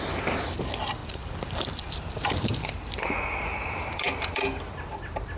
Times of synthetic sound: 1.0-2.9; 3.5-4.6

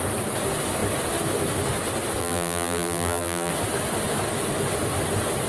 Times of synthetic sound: 2.2-3.5

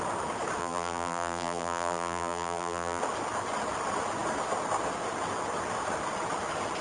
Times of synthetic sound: 0.6-3.0

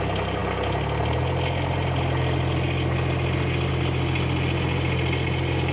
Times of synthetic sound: none

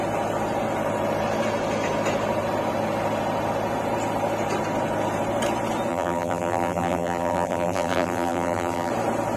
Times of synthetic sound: 5.9-8.9

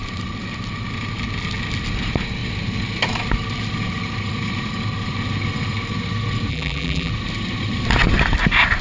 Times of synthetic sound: 6.5-7.1